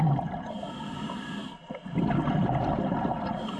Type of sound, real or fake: real